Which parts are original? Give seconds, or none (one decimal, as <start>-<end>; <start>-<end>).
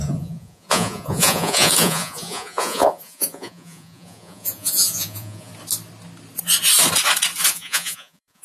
5.5-7.5